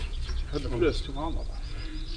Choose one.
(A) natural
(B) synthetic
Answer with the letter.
B